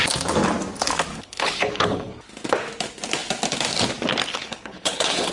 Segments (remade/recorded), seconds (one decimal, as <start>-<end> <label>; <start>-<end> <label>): 0.0-1.1 recorded; 1.1-2.1 remade; 2.1-4.3 recorded; 4.3-5.3 remade